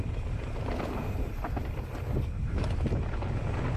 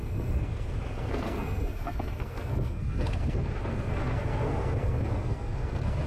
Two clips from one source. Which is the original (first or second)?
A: first